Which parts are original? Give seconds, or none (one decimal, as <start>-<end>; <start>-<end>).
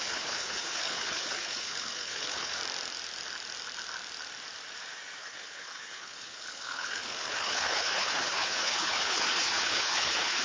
2.6-5.2